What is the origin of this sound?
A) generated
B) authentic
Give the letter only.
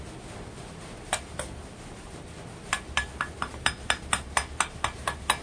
B